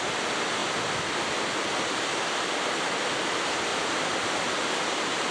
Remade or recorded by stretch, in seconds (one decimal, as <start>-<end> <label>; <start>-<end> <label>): 0.0-5.3 recorded